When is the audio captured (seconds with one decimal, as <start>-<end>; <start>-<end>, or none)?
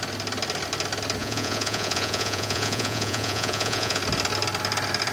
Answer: 0.0-1.2; 4.0-5.1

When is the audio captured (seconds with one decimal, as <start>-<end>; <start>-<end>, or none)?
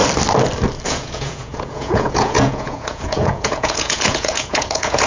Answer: 0.0-0.9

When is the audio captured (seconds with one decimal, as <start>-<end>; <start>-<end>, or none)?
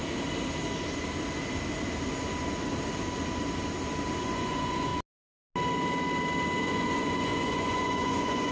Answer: 0.0-4.2; 4.9-6.6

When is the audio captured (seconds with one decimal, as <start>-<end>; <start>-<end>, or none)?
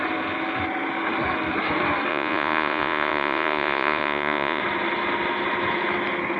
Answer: 0.0-2.1; 4.6-6.4